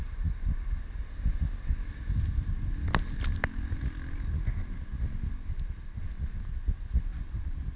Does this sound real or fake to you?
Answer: real